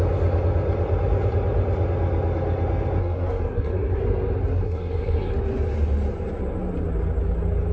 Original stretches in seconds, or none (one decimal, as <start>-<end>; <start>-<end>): 0.0-3.0; 4.0-4.6; 5.3-7.7